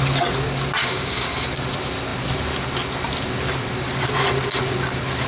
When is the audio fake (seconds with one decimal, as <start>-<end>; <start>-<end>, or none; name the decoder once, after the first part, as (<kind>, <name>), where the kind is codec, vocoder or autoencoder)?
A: 0.8-1.5 (codec, DAC)